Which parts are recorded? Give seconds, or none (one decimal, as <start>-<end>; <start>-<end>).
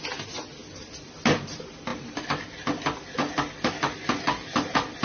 0.0-5.0